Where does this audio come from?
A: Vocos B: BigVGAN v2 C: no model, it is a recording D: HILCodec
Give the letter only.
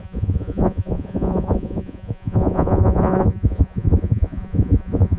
A